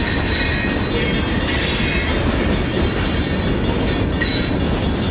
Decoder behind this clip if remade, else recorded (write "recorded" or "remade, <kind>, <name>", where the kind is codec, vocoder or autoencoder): recorded